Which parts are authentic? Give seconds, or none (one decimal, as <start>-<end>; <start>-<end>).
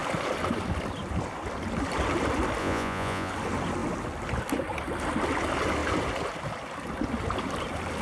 0.0-2.6; 3.3-8.0